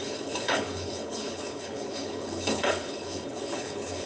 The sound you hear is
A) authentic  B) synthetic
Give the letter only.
B